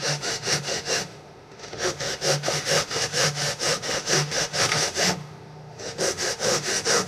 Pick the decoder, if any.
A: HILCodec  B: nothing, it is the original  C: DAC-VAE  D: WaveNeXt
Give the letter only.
C